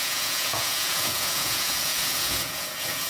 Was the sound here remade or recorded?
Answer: remade